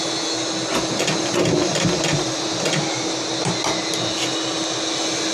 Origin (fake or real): real